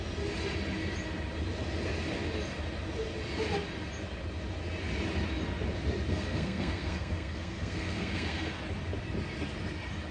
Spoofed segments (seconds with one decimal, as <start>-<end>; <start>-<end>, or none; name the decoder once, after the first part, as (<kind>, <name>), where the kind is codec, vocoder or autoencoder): 6.1-8.6 (codec, SNAC)

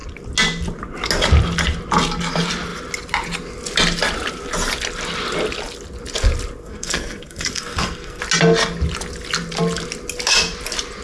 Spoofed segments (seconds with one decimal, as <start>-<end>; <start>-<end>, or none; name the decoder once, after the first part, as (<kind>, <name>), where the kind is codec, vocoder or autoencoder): 6.6-8.2 (codec, SNAC)

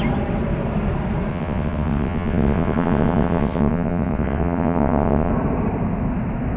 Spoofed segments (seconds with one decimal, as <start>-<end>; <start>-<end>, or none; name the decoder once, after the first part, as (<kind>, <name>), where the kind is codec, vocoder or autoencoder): 1.3-5.3 (vocoder, WaveNeXt)

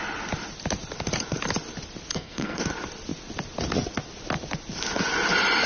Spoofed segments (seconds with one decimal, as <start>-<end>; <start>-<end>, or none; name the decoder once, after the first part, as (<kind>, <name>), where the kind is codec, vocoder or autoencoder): 2.1-2.6 (codec, SNAC)

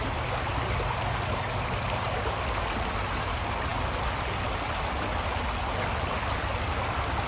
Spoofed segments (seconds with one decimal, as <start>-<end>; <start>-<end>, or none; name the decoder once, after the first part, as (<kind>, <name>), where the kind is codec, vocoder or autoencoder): none

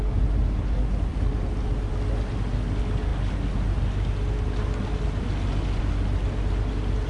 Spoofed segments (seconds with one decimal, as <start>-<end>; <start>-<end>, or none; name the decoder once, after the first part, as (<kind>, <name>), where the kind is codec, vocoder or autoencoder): none